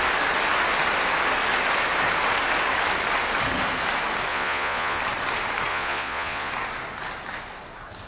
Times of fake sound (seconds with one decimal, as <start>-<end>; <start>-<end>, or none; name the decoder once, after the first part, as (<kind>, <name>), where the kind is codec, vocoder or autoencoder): 4.3-5.0 (vocoder, Vocos); 5.7-6.5